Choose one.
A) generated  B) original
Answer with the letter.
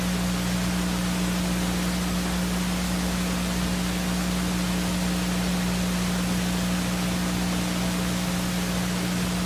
B